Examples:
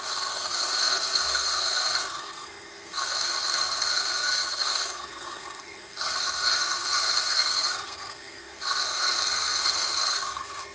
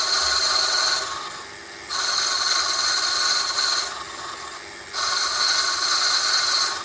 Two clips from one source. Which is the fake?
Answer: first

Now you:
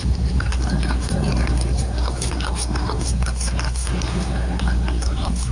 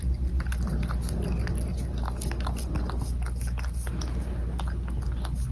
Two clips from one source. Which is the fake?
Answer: first